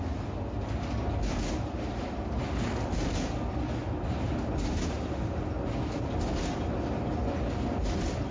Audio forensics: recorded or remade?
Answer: recorded